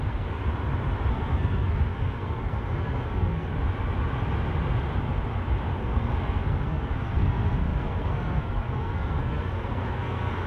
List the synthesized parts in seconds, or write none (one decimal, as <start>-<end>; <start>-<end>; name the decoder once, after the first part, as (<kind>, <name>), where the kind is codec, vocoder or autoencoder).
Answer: 0.0-0.4 (codec, SNAC); 1.1-3.5; 5.8-10.5